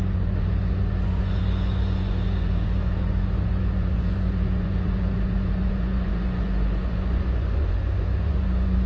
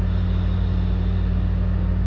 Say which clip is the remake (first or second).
first